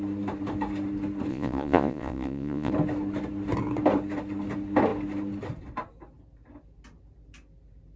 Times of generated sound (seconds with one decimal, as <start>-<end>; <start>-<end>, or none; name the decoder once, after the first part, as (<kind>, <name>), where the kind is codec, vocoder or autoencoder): 1.3-2.7 (vocoder, Vocos)